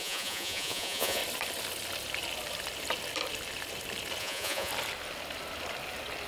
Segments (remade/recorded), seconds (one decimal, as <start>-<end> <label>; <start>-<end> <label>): 0.0-1.2 remade; 1.2-4.2 recorded; 4.2-4.7 remade; 4.7-6.3 recorded